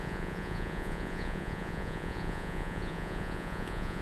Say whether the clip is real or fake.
fake